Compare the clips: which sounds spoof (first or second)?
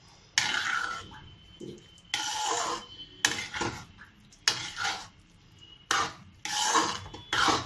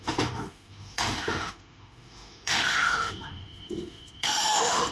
second